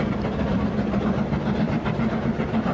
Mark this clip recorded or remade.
recorded